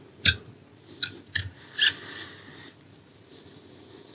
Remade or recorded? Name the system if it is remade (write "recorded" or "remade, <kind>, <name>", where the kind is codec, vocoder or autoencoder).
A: recorded